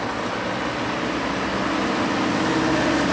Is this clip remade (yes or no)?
no